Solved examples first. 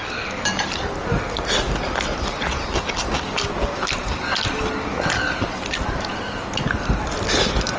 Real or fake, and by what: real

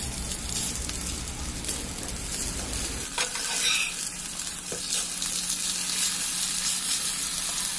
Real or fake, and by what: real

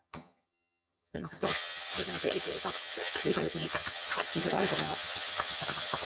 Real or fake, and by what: fake, vocoder, HiFi-GAN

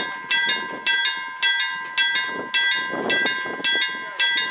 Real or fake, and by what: real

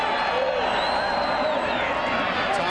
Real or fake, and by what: real